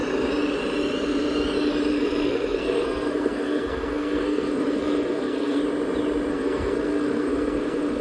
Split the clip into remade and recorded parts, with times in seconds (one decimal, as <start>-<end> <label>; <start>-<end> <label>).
0.0-1.9 recorded; 1.9-5.6 remade; 5.6-6.3 recorded; 6.3-8.0 remade